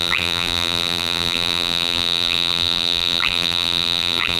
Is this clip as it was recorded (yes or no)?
no